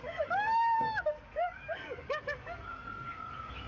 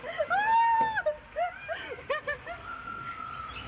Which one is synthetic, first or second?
first